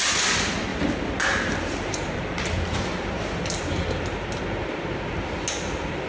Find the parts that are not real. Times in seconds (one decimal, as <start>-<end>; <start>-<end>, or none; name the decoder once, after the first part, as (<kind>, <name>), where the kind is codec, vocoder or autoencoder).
0.7-4.4 (vocoder, BigVGAN v2)